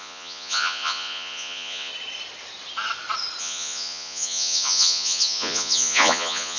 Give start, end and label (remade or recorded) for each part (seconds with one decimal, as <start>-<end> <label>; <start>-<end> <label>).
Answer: 0.0-1.9 remade; 1.9-3.4 recorded; 3.4-6.6 remade